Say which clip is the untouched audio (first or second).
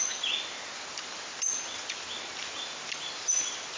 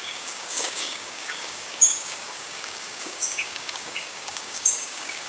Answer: first